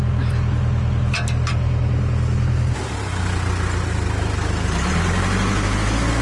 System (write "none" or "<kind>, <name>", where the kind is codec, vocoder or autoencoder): none